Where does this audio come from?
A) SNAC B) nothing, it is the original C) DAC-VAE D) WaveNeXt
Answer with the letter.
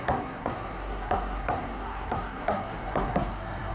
A